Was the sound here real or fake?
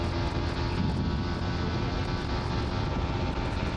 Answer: real